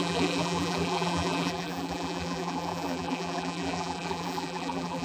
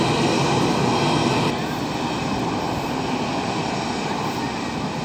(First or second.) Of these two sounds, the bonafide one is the second